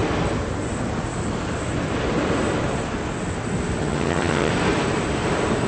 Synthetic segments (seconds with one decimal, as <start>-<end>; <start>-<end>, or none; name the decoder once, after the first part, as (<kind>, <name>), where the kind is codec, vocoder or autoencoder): 3.8-4.5 (vocoder, HiFi-GAN)